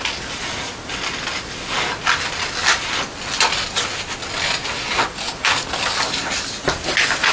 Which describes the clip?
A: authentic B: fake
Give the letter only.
A